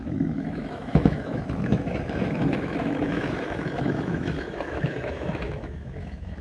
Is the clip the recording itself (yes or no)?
no